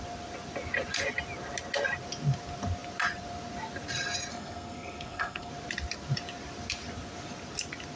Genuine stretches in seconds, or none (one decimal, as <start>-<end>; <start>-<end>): 0.0-4.3; 5.5-8.0